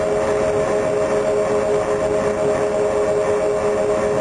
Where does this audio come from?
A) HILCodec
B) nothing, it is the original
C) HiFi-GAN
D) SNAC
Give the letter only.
B